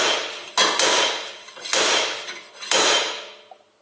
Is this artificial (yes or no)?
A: no